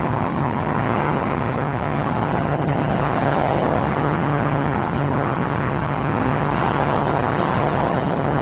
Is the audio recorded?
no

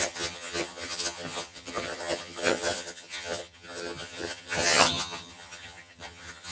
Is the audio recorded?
no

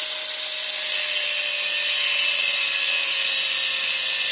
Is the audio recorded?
yes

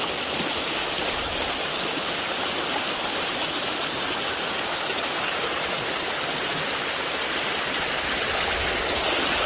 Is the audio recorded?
yes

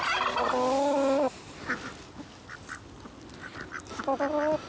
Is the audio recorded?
yes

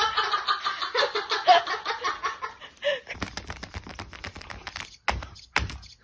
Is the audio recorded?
yes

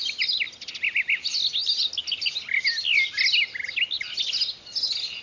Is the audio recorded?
yes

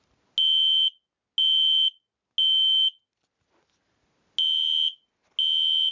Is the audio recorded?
yes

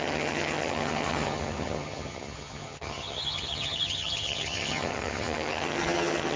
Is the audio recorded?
no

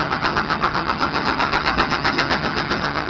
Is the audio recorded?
no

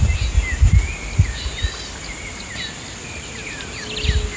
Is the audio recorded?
yes